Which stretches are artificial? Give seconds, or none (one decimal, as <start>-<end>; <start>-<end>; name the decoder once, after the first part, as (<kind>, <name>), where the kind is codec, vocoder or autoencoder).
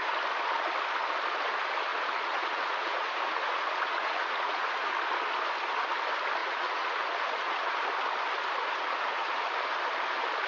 1.9-4.9 (vocoder, Vocos); 6.4-7.7; 8.6-9.4